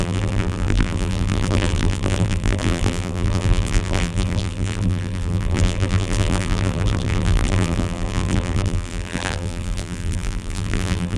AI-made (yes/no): yes